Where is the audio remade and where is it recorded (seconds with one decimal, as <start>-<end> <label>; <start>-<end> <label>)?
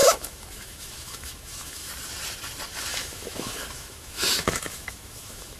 0.0-1.9 remade; 1.9-2.9 recorded; 2.9-5.6 remade